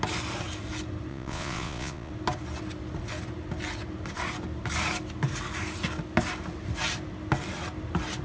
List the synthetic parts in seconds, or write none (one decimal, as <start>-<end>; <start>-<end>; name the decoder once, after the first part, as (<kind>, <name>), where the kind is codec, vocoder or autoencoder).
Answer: 1.1-2.1 (vocoder, Vocos)